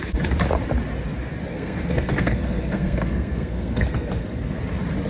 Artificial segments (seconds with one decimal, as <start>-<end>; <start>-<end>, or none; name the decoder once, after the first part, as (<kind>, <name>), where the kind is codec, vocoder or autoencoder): 1.5-4.6 (codec, SNAC)